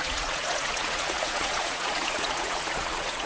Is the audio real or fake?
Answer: fake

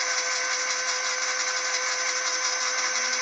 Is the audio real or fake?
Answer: real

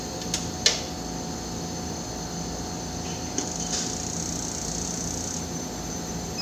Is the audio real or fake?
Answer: real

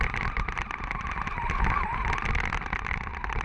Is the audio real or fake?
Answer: real